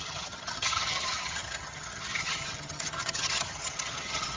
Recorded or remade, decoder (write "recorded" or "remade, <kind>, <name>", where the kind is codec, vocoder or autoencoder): remade, vocoder, HiFi-GAN